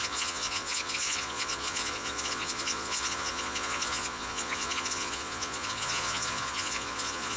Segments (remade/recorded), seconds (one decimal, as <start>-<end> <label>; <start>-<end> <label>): 0.0-7.4 remade